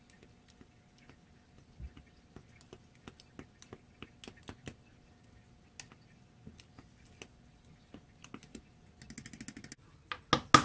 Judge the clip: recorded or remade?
recorded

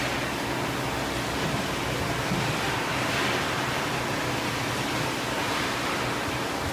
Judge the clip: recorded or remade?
recorded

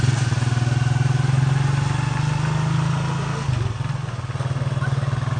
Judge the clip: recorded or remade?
recorded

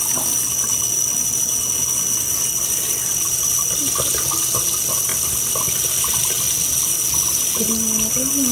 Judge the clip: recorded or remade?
recorded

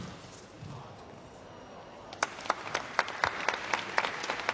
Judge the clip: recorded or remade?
recorded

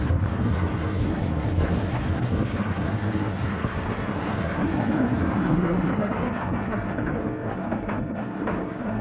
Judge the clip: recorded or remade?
remade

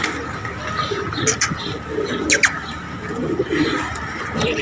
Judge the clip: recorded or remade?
recorded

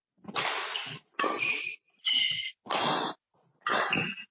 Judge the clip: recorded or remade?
recorded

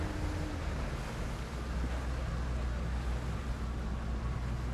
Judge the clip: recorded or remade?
recorded